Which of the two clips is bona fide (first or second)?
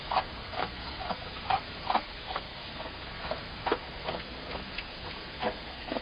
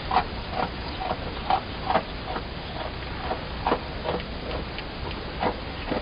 second